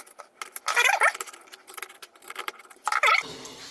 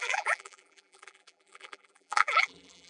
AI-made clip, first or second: second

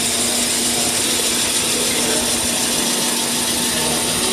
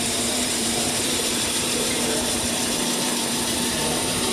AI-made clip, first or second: second